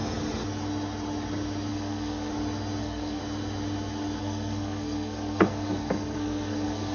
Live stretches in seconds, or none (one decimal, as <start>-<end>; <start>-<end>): 0.0-1.7; 2.3-2.8; 3.2-4.2